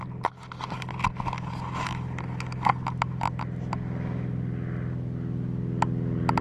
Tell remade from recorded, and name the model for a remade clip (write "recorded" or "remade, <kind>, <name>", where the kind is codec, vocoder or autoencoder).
recorded